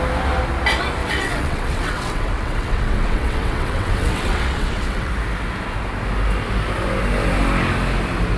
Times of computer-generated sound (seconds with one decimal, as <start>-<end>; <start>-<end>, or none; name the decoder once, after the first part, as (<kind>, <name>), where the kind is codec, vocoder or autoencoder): 1.0-5.1 (vocoder, WaveNeXt)